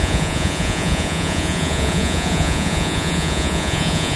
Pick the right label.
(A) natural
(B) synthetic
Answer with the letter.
B